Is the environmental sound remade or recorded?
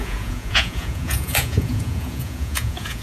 remade